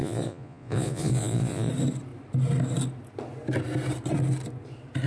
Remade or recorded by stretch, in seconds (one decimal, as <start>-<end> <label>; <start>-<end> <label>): 0.0-1.7 remade; 1.7-5.1 recorded